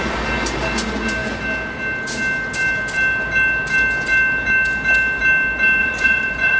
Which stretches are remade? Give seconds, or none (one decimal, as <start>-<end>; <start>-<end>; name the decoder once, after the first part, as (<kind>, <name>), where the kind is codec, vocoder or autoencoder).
5.8-6.6 (vocoder, Vocos)